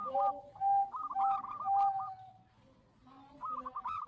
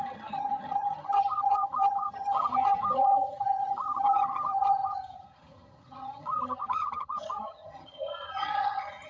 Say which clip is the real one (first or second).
first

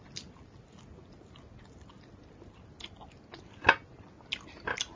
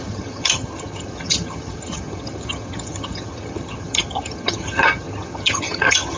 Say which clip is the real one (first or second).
first